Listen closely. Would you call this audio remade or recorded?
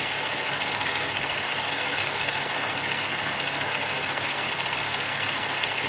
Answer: remade